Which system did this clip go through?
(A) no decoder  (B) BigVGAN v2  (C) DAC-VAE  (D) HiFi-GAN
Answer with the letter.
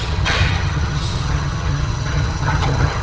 D